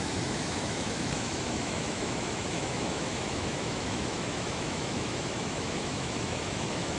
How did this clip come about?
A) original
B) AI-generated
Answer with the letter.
B